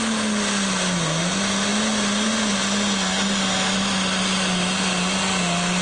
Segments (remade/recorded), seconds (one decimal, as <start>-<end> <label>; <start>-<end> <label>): 0.0-5.8 recorded